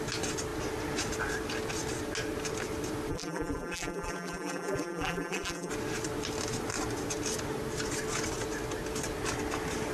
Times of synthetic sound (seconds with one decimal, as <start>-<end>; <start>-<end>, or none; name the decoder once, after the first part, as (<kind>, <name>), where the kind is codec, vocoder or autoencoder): 3.1-5.7 (vocoder, BigVGAN v2)